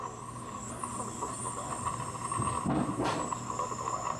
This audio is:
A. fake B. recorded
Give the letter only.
B